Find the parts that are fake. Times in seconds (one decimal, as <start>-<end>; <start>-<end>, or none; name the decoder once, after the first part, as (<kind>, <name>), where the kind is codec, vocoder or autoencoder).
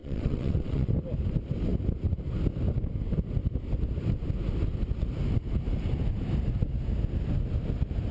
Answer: 0.0-0.9 (vocoder, WaveNeXt)